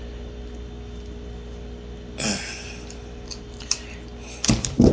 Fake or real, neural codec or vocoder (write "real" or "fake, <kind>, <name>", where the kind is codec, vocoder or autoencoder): real